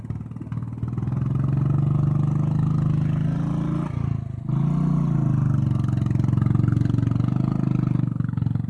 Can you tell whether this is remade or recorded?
recorded